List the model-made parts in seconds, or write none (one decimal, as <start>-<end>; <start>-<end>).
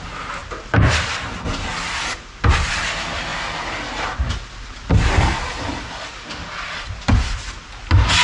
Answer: none